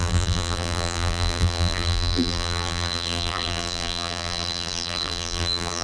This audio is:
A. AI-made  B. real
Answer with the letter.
A